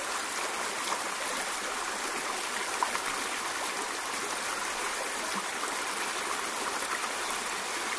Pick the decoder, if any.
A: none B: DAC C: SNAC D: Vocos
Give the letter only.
A